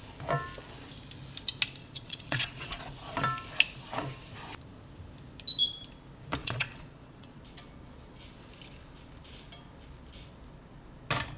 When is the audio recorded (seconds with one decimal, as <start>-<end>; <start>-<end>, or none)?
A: 0.0-1.8; 2.8-6.4; 7.4-11.4